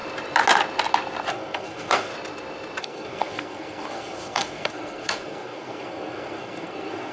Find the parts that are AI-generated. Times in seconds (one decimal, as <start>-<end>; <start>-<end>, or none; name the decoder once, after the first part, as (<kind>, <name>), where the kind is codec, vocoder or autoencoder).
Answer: 1.3-2.1 (codec, SNAC); 2.8-7.1